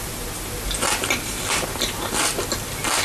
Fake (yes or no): no